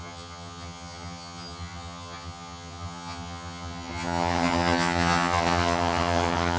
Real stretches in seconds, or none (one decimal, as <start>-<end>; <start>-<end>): none